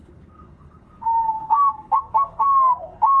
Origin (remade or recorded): remade